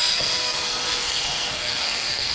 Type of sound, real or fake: fake